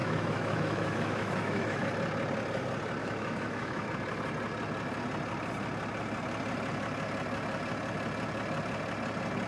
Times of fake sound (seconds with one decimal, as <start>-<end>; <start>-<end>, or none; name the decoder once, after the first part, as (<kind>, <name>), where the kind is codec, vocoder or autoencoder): 0.0-1.9 (autoencoder, DAC-VAE); 3.0-3.9